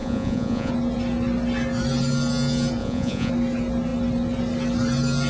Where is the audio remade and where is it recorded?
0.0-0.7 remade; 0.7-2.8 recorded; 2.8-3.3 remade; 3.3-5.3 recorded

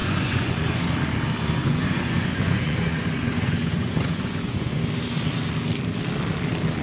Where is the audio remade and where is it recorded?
0.0-0.9 remade; 0.9-1.6 recorded; 1.6-4.8 remade; 4.8-6.8 recorded

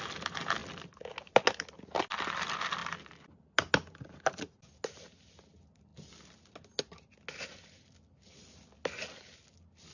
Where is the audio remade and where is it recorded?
0.0-9.9 recorded

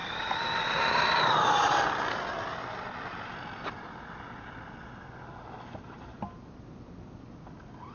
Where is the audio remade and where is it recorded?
0.0-7.9 recorded

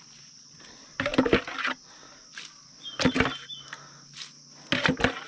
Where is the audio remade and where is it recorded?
0.0-5.3 recorded

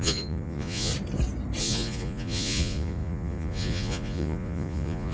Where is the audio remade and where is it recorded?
0.0-0.9 remade; 0.9-1.6 recorded; 1.6-5.1 remade

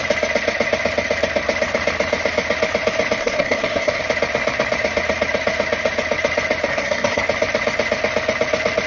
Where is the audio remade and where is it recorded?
0.0-3.2 recorded; 3.2-4.0 remade; 4.0-6.7 recorded; 6.7-7.2 remade; 7.2-8.9 recorded